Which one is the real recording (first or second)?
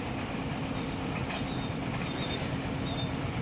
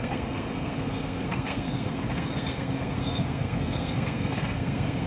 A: first